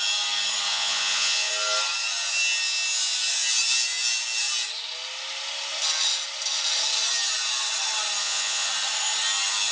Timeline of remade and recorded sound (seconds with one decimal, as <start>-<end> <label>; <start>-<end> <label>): 0.0-0.7 recorded; 0.7-1.5 remade; 1.5-8.2 recorded; 8.2-8.7 remade; 8.7-9.7 recorded